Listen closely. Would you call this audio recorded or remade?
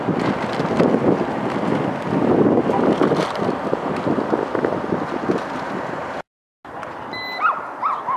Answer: recorded